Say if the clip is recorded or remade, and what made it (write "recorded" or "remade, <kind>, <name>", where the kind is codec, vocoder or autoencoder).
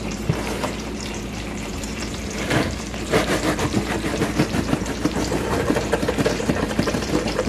remade, vocoder, BigVGAN v2